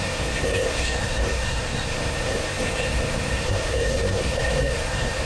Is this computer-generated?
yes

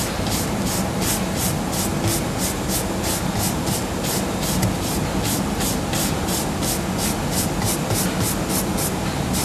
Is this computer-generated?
no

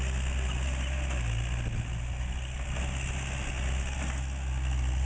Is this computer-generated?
no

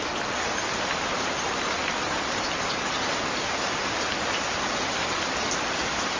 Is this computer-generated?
no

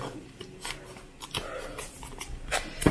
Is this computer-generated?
no